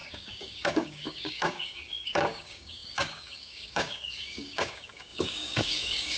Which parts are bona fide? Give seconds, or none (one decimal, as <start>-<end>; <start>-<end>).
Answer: none